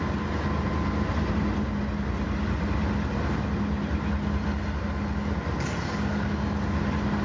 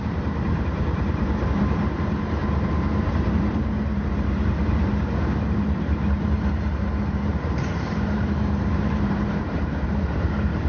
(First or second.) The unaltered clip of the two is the first